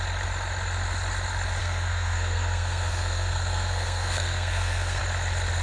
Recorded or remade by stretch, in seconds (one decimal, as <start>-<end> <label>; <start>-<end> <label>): 0.0-1.6 recorded; 1.6-5.0 remade; 5.0-5.6 recorded